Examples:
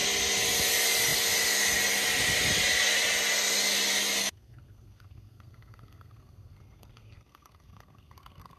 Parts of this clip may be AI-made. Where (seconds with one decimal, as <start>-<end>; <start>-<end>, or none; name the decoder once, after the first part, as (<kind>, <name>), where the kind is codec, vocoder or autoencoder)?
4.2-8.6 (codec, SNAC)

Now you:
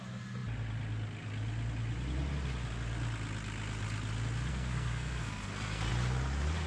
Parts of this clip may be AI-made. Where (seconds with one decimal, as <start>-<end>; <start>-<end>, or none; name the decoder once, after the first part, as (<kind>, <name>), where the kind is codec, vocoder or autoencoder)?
4.5-5.9 (codec, SNAC)

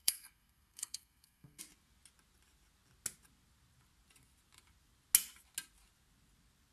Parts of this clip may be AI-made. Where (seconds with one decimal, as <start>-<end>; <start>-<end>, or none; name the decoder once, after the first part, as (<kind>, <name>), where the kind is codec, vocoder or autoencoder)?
0.0-1.6 (codec, SNAC)